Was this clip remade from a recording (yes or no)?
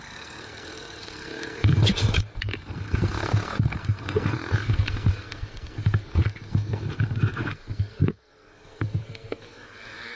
yes